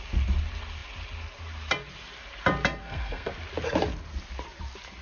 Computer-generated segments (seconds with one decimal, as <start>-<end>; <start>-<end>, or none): 2.8-3.3